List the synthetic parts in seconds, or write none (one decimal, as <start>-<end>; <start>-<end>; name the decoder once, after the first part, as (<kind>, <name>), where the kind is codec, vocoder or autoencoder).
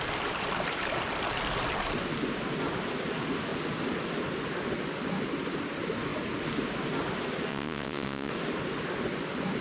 7.5-8.3 (vocoder, WaveNeXt)